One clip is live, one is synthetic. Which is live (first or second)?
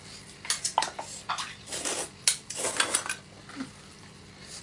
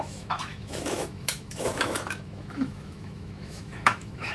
first